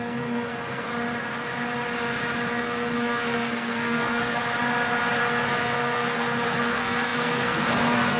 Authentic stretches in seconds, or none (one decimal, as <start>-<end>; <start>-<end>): 0.9-2.5; 4.4-5.2

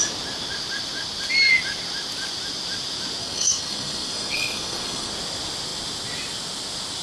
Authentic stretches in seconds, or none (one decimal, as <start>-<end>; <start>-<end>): 0.0-3.2; 5.1-7.0

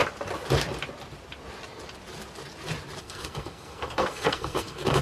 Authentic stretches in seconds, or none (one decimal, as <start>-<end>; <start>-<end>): 0.0-3.0

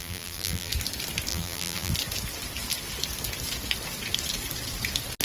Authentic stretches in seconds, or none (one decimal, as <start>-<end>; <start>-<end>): 0.7-1.3; 1.9-5.2